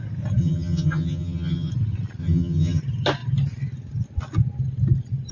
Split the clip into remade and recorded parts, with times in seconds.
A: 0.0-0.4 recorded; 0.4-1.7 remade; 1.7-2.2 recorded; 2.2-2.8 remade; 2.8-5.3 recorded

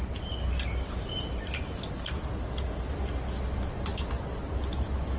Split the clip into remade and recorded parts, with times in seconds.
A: 0.0-5.2 recorded